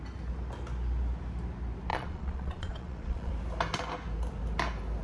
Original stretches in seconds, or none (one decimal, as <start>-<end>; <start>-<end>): 0.0-1.9; 3.3-5.0